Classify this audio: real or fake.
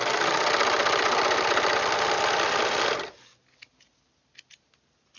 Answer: real